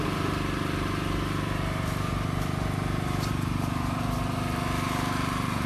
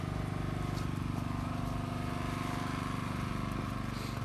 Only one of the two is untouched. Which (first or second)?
second